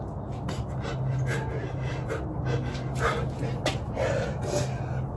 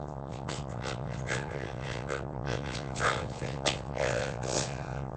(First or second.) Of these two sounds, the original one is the first